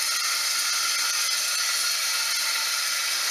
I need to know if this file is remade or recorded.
recorded